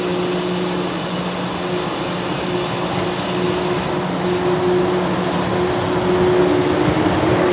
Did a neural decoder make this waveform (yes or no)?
no